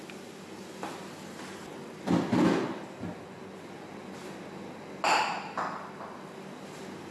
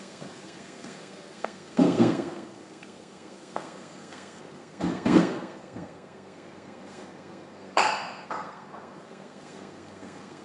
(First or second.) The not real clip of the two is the second